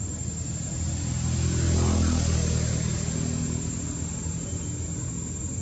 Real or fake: real